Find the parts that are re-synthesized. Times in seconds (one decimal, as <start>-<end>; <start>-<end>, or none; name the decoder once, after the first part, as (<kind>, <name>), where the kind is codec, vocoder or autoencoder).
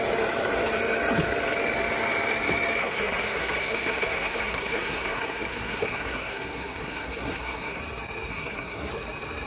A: 2.8-7.8 (codec, SNAC); 8.3-8.9